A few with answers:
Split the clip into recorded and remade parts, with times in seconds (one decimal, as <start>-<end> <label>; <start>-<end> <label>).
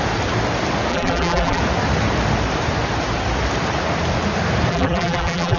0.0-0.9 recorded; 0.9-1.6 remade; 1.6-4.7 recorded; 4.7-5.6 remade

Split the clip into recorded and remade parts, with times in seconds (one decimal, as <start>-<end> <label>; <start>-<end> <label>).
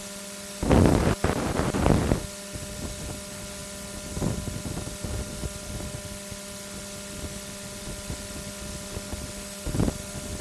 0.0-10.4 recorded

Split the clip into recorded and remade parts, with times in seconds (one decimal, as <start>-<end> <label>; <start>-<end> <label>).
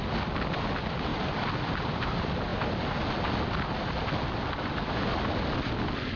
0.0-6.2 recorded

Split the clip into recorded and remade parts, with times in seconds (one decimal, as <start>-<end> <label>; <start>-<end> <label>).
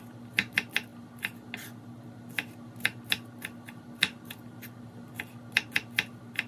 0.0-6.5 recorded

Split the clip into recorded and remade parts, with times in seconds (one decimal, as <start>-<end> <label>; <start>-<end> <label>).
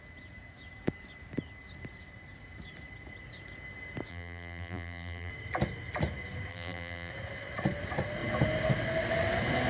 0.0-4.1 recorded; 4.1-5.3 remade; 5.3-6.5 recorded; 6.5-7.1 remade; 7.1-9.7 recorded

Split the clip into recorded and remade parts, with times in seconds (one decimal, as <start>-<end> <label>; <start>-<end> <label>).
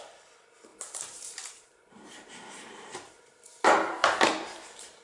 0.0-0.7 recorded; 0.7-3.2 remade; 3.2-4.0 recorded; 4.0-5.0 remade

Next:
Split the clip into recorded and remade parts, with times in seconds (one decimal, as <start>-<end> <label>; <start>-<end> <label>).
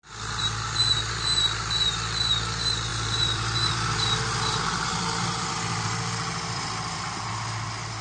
0.0-2.9 recorded; 2.9-8.0 remade